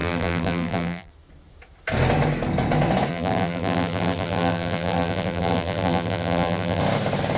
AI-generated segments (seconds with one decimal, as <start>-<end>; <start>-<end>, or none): 0.0-1.1; 3.1-6.8